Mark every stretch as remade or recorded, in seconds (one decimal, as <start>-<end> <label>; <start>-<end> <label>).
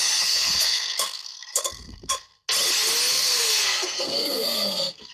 0.0-2.3 remade; 2.3-3.1 recorded; 3.1-5.1 remade